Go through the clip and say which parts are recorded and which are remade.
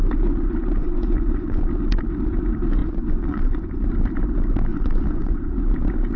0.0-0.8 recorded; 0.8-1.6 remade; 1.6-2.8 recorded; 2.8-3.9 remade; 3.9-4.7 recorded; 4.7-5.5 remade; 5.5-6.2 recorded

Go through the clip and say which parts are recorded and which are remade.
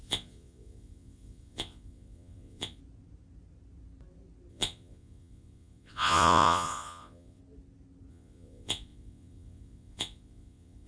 0.0-2.8 remade; 2.8-4.5 recorded; 4.5-7.4 remade; 7.4-8.1 recorded; 8.1-10.9 remade